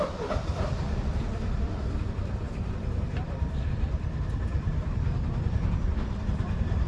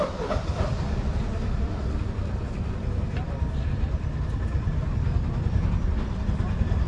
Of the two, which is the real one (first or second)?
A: second